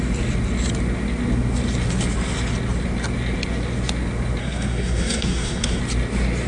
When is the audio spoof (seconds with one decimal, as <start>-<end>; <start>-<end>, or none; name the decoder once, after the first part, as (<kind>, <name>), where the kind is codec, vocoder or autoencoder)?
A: 4.4-5.8 (codec, SNAC)